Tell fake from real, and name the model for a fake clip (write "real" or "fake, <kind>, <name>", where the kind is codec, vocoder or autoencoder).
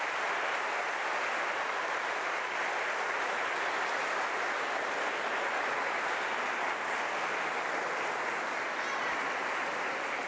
real